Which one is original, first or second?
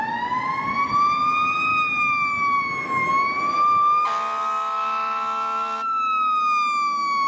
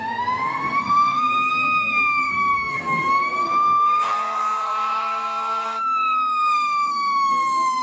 first